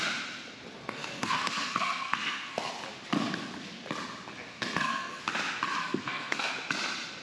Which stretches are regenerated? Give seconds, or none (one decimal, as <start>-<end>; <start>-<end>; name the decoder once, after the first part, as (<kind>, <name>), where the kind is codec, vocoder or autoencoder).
0.8-2.7 (codec, SNAC); 4.5-5.2; 5.8-6.5